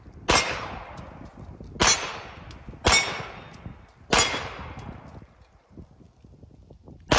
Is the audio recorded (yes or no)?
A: yes